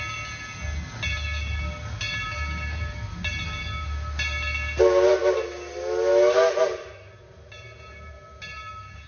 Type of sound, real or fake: real